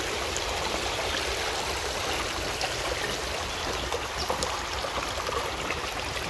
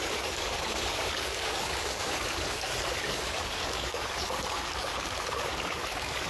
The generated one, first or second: second